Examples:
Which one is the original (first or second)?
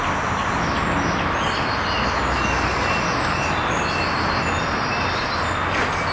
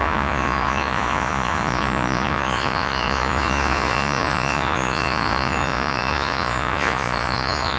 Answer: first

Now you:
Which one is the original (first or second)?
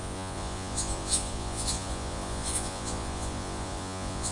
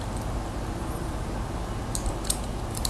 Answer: second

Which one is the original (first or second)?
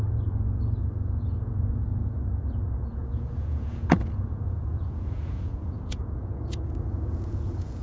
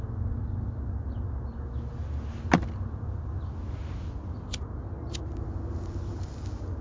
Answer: second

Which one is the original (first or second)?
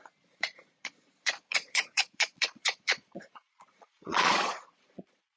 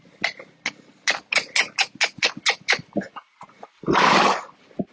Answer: second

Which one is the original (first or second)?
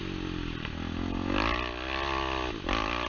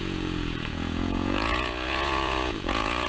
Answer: first